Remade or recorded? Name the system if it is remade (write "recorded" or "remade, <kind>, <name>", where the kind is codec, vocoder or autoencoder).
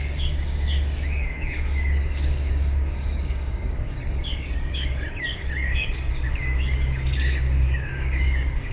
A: remade, codec, DAC